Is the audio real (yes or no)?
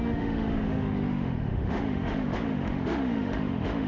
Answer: no